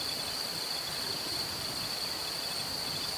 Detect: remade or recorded recorded